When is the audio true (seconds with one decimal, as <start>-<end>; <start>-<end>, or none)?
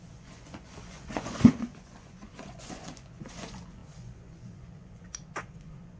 none